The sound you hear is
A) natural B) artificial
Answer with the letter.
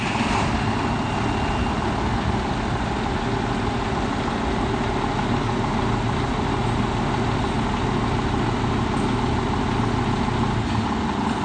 A